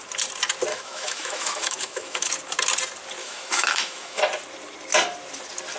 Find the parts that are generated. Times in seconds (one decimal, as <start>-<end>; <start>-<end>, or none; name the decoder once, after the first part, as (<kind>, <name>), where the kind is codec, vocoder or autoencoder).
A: 0.7-2.3 (autoencoder, DAC-VAE); 3.2-4.2